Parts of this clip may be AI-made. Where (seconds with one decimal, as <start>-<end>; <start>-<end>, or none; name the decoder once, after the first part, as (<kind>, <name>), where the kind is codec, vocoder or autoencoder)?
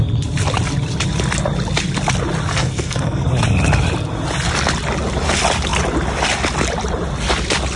2.5-3.3 (codec, SNAC)